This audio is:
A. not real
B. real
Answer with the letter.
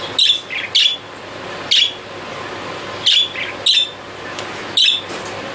B